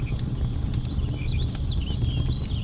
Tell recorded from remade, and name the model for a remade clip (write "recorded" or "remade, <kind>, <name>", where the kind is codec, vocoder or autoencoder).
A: recorded